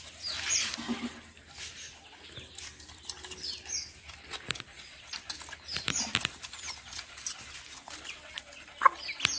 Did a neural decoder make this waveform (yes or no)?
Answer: no